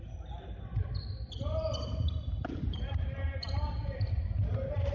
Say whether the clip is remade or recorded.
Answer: recorded